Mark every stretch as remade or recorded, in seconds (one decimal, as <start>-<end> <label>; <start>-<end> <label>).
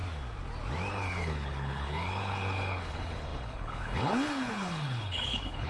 0.0-0.9 recorded; 0.9-5.7 remade